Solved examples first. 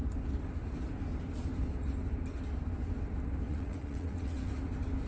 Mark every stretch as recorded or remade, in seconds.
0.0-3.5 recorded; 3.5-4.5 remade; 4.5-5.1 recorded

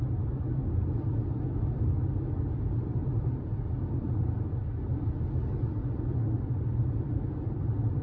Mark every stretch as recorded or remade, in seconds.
0.0-3.0 recorded; 3.0-4.5 remade; 4.5-8.0 recorded

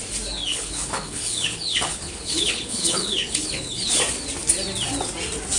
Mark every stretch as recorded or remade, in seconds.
0.0-0.5 recorded; 0.5-3.9 remade; 3.9-5.6 recorded

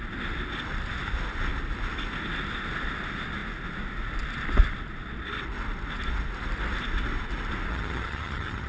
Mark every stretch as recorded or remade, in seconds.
0.0-7.7 recorded; 7.7-8.7 remade

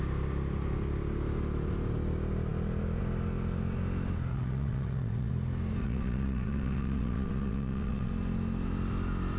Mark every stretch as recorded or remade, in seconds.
0.0-4.3 recorded; 4.3-5.3 remade; 5.3-5.8 recorded; 5.8-8.1 remade; 8.1-9.4 recorded

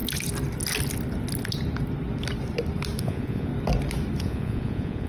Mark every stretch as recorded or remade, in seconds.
0.0-3.0 recorded; 3.0-3.5 remade; 3.5-4.2 recorded; 4.2-5.1 remade

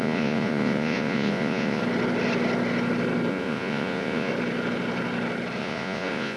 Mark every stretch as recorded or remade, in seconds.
0.0-1.8 remade; 1.8-3.3 recorded; 3.3-4.3 remade; 4.3-5.6 recorded; 5.6-6.4 remade

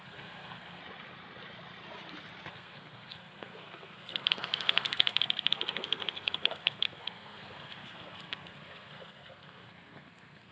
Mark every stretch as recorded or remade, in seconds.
0.0-0.8 remade; 0.8-2.5 recorded; 2.5-10.5 remade